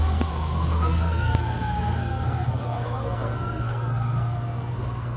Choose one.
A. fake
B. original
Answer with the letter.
A